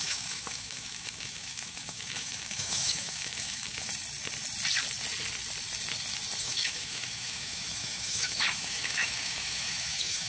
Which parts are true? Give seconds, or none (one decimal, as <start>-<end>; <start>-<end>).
3.9-6.4